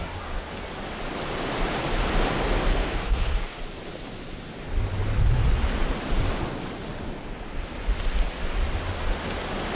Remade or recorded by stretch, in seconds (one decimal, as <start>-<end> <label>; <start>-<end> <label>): 0.0-2.7 recorded; 2.7-3.6 remade; 3.6-9.7 recorded